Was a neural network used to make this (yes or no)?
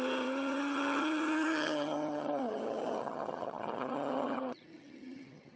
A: yes